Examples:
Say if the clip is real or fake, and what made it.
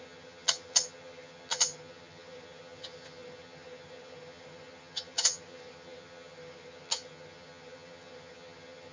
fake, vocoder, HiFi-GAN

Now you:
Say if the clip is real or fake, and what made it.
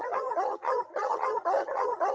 fake, vocoder, HiFi-GAN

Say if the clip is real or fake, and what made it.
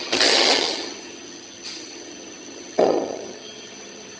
fake, vocoder, HiFi-GAN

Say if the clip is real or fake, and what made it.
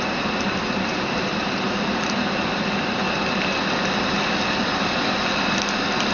real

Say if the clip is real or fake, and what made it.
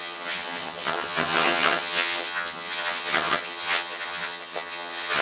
fake, vocoder, HiFi-GAN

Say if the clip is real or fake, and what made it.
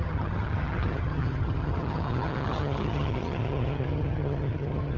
fake, vocoder, HiFi-GAN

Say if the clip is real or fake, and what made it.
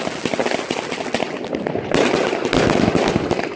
real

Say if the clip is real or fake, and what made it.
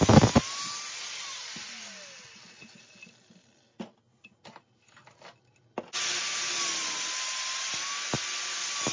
real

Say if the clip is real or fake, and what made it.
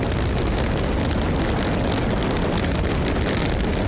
real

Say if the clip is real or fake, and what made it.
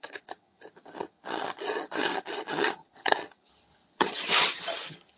fake, vocoder, HiFi-GAN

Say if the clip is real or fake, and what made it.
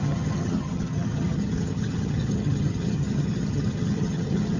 fake, vocoder, HiFi-GAN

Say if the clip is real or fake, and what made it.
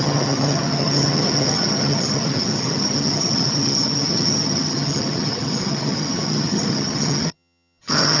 fake, vocoder, HiFi-GAN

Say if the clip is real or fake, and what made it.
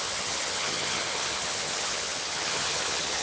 fake, vocoder, HiFi-GAN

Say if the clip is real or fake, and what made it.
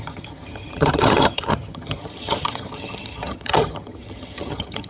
fake, vocoder, HiFi-GAN